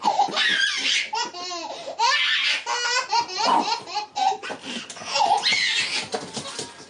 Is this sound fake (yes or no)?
no